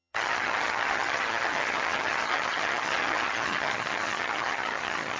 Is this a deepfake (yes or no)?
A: yes